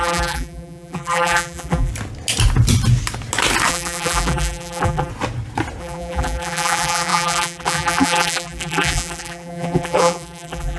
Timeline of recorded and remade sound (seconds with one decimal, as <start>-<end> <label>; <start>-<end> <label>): 0.0-1.9 remade; 1.9-3.7 recorded; 3.7-5.1 remade; 5.1-5.8 recorded; 5.8-10.8 remade